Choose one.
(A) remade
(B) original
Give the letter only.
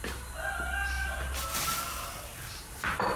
B